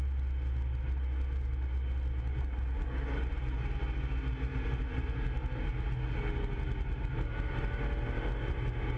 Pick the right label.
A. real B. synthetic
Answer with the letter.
A